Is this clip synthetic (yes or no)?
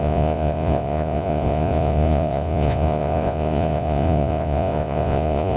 yes